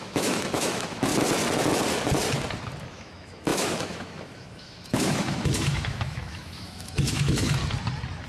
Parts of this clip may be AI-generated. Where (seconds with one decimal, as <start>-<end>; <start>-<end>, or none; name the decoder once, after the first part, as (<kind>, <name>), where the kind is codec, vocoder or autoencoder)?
0.0-1.1 (autoencoder, DAC-VAE); 2.9-7.6